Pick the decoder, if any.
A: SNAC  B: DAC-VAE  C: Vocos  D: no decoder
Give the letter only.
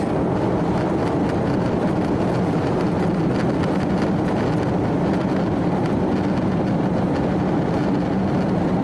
D